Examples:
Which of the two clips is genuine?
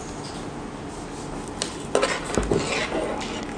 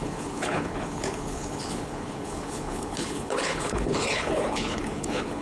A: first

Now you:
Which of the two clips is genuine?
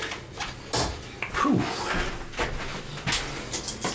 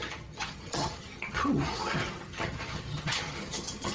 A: first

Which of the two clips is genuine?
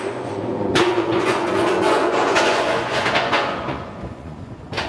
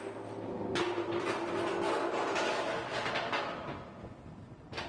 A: second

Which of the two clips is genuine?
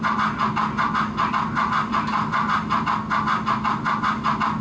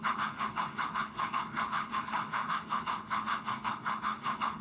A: first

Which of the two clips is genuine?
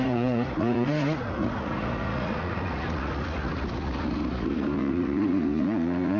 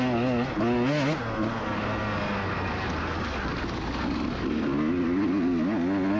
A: second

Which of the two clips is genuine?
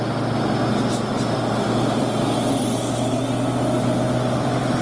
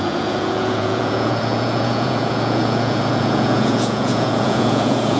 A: first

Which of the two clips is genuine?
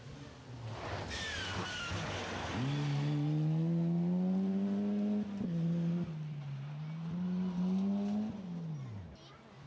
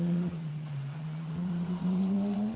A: first